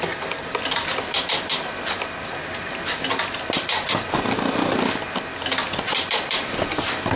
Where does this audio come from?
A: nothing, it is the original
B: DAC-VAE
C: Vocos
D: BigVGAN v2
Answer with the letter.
D